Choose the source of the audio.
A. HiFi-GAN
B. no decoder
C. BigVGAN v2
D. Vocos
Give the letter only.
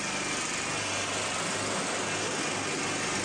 B